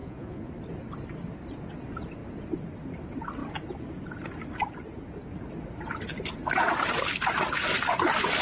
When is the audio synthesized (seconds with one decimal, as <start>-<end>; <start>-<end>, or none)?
0.0-0.5